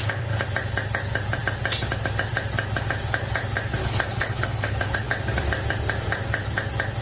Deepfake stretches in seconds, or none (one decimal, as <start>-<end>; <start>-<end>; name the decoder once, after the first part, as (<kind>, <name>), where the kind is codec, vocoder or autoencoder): 3.8-5.1 (codec, HILCodec)